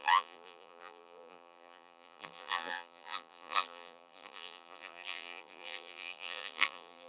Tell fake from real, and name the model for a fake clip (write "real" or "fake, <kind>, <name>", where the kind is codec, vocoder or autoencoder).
fake, vocoder, BigVGAN v2